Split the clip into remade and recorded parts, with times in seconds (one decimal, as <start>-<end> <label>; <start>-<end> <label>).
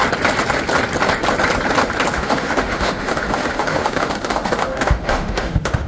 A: 0.0-2.1 recorded; 2.1-5.9 remade